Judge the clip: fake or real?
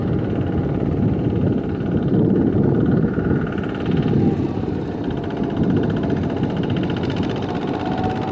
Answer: real